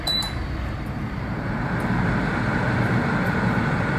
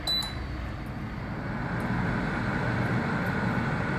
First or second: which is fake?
first